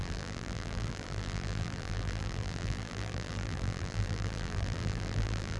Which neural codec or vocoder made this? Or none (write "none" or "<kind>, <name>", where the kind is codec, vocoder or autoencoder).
vocoder, BigVGAN v2